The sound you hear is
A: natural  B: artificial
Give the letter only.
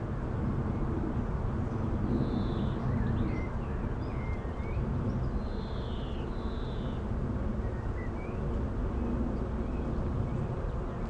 A